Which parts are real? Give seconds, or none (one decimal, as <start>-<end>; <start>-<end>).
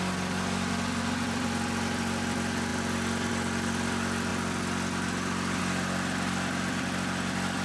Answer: 0.0-7.6